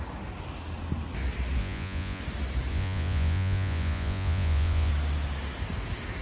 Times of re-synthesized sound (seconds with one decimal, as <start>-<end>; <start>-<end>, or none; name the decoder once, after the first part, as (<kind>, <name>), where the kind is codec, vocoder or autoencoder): 1.6-2.2 (vocoder, Vocos); 2.7-4.9